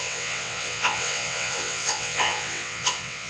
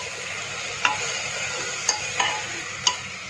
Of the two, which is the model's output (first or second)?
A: first